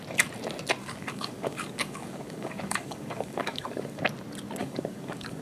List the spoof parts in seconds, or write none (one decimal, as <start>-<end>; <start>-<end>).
0.8-4.0; 4.6-5.4